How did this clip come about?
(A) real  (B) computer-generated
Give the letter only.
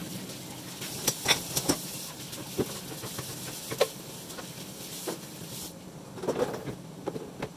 A